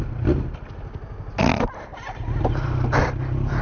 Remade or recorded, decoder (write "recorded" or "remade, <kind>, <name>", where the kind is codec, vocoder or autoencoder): recorded